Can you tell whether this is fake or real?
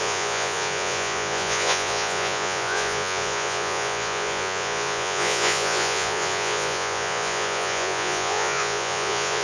fake